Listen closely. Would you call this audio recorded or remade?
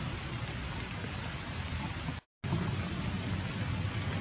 recorded